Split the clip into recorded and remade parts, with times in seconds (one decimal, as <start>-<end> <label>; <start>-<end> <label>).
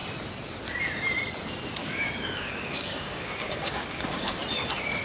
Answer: 0.0-1.8 recorded; 1.8-4.3 remade; 4.3-5.0 recorded